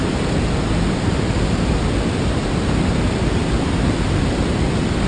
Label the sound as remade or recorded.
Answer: recorded